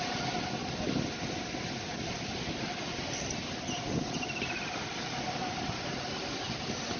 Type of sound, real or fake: real